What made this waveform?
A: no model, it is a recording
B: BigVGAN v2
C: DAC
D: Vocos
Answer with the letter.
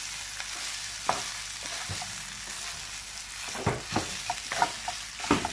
A